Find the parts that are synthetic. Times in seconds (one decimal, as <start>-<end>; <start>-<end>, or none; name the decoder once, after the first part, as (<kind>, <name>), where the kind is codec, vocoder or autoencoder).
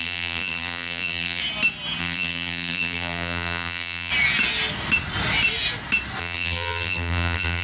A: 0.0-1.4 (vocoder, BigVGAN v2); 2.0-4.1; 6.2-7.6